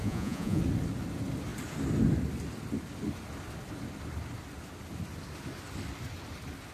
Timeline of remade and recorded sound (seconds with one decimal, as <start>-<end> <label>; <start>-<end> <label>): 0.0-0.6 remade; 0.6-6.7 recorded